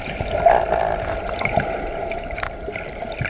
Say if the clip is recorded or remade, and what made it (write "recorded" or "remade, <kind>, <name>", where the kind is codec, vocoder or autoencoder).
recorded